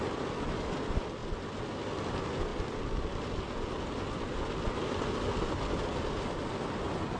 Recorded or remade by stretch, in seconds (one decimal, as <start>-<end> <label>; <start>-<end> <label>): 0.0-7.2 recorded